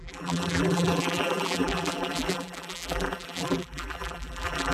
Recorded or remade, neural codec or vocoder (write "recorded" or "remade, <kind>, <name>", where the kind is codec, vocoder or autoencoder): remade, vocoder, BigVGAN v2